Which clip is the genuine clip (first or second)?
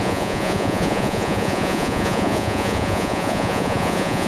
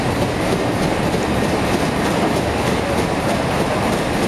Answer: second